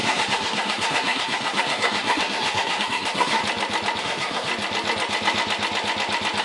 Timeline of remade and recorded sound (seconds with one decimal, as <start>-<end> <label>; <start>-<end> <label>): 0.0-3.4 remade; 3.4-4.0 recorded; 4.0-4.5 remade; 4.5-6.4 recorded